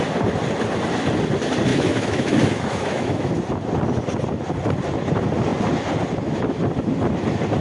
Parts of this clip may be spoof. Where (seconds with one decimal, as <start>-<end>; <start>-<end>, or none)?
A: 1.7-3.3